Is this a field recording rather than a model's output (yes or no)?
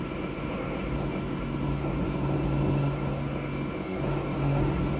no